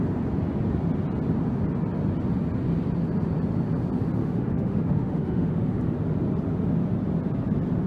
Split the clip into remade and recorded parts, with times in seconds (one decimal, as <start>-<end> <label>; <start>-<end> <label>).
0.0-4.2 recorded; 4.2-5.8 remade; 5.8-7.9 recorded